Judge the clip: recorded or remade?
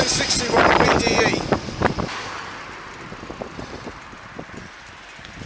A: recorded